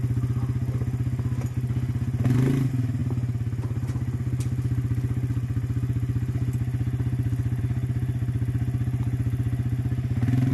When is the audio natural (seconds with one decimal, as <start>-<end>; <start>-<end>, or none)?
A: 0.0-10.5